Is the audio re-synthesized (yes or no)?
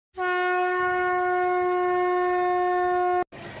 no